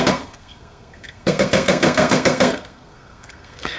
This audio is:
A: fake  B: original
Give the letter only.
A